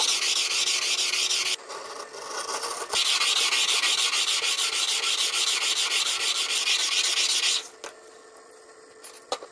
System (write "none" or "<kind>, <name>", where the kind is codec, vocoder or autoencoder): none